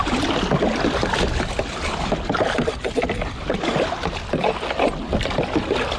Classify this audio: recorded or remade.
recorded